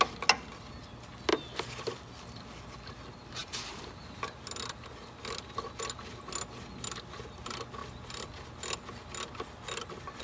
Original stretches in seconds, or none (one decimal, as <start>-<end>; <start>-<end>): 0.0-10.2